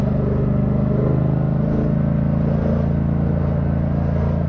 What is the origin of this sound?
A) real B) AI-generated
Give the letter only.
A